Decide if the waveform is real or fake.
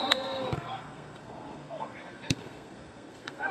fake